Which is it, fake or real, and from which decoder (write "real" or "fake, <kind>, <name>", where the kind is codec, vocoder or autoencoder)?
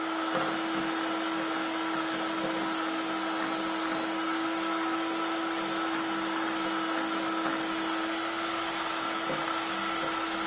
real